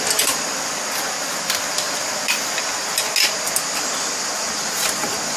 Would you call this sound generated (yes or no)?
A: no